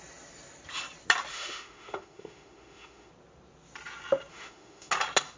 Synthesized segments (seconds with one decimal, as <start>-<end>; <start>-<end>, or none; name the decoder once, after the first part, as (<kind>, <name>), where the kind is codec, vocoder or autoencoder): 1.3-3.1 (autoencoder, DAC-VAE); 4.3-4.9